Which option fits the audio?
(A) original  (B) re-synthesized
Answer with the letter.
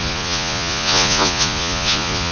B